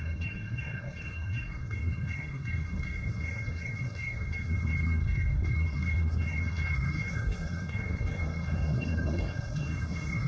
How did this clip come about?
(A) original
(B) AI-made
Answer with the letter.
B